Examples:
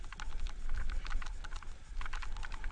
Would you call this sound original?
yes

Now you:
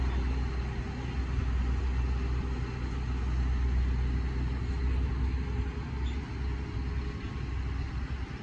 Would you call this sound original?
yes